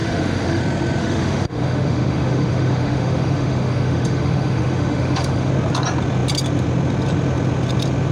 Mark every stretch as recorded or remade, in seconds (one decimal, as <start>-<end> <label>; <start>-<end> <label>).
0.0-0.6 remade; 0.6-1.0 recorded; 1.0-5.5 remade; 5.5-8.1 recorded